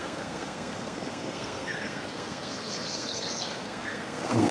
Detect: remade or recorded remade